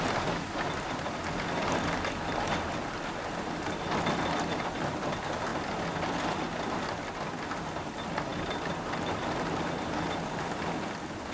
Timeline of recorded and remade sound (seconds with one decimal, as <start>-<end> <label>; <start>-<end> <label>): 0.0-11.3 recorded